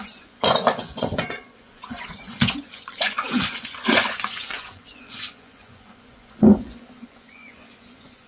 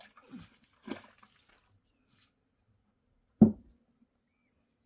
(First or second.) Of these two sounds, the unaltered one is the second